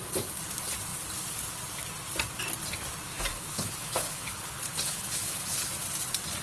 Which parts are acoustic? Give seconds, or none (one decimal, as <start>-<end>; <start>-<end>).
0.0-3.3; 5.7-6.4